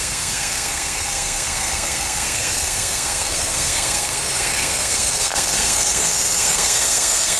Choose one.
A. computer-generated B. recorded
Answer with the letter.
A